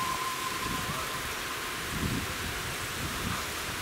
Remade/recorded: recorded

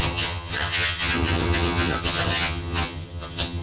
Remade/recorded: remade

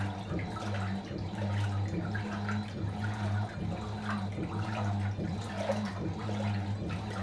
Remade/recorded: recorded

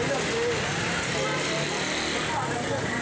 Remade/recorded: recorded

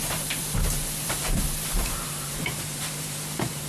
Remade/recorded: remade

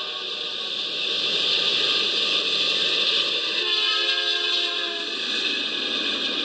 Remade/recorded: recorded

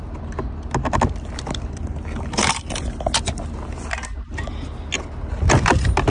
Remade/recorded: recorded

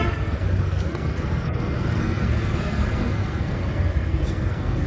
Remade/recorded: remade